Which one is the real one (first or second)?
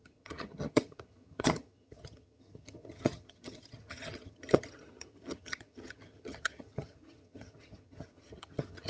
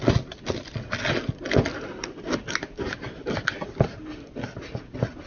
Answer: second